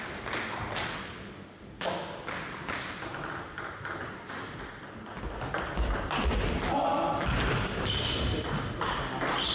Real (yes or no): yes